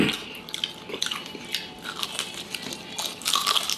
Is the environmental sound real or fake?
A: real